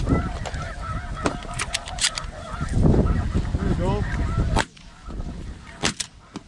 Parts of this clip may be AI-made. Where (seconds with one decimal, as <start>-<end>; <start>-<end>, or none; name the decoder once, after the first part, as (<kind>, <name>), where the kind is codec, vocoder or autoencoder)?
none